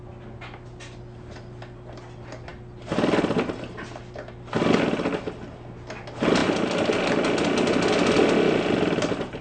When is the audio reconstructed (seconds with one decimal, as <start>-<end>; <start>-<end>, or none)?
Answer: none

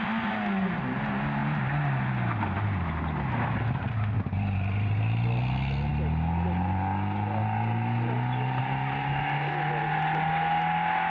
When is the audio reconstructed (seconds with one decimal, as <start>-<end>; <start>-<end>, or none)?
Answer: none

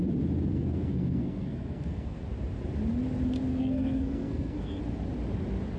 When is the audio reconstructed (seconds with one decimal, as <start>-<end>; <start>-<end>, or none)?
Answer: 0.5-2.2; 3.5-4.8

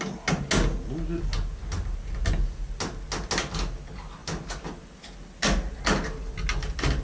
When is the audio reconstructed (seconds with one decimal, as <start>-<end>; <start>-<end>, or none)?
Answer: none

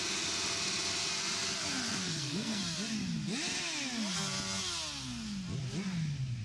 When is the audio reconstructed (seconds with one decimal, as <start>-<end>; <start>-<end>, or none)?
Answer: 1.9-2.6

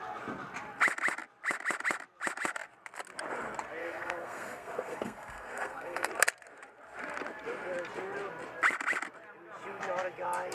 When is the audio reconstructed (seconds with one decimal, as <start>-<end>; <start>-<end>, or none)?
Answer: 3.8-6.1

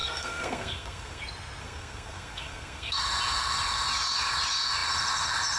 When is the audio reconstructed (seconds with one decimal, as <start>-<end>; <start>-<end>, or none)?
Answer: 0.0-1.2; 1.6-3.0